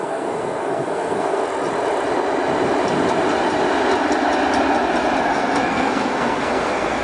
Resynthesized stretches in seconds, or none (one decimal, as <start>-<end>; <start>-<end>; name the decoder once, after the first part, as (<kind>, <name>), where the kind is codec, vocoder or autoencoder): 0.0-1.4 (codec, SNAC); 5.2-7.0